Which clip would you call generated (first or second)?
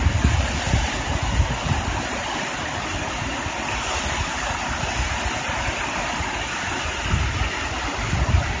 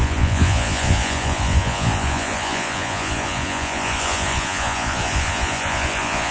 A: second